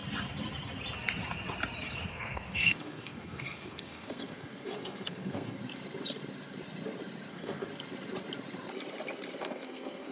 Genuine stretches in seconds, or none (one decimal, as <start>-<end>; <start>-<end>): 0.0-2.1; 5.6-7.3; 7.7-9.4